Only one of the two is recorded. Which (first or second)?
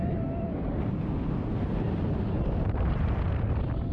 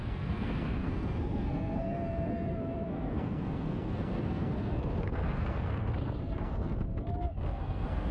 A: first